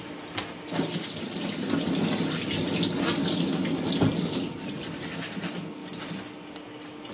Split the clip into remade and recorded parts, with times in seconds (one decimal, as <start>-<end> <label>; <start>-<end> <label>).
0.0-7.1 recorded